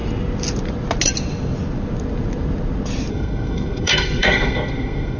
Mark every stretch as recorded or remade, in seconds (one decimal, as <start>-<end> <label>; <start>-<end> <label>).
0.0-3.1 recorded; 3.1-5.2 remade